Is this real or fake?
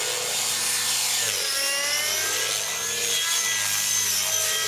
real